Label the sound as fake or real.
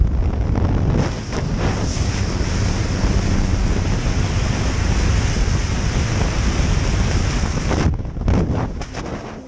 real